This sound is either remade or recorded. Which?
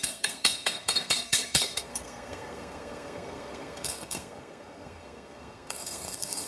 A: remade